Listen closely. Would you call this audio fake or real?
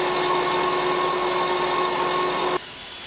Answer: real